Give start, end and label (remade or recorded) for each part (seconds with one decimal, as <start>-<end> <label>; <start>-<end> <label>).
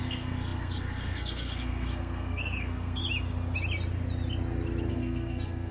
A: 0.0-3.0 remade; 3.0-4.9 recorded; 4.9-5.7 remade